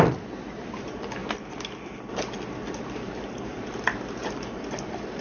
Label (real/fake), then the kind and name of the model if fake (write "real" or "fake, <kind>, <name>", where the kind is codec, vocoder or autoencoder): fake, vocoder, BigVGAN v2